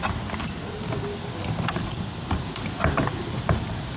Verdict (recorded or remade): recorded